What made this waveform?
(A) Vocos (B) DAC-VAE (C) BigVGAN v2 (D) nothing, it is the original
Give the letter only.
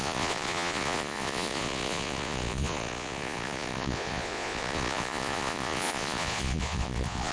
A